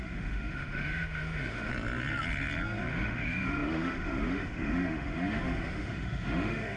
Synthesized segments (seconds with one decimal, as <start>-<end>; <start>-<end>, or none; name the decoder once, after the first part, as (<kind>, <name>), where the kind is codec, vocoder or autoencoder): 0.0-1.7 (autoencoder, DAC-VAE); 2.9-6.8